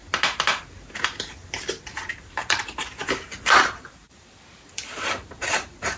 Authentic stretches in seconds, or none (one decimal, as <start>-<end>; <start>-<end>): 0.0-2.1; 3.0-3.7